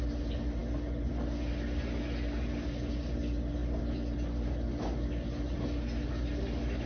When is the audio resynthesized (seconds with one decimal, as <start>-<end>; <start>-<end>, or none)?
none